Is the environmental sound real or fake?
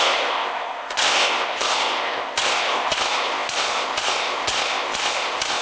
fake